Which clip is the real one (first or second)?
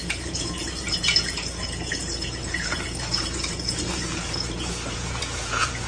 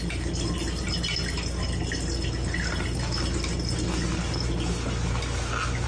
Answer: second